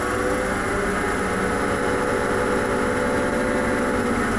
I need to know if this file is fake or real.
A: real